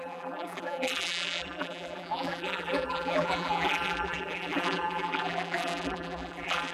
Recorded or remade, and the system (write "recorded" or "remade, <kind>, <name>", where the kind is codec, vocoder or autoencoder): remade, vocoder, BigVGAN v2